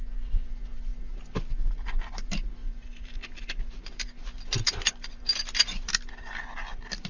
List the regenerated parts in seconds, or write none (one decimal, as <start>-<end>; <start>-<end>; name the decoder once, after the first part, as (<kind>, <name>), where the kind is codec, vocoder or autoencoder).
2.6-7.1 (vocoder, BigVGAN v2)